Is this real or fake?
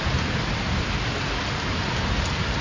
real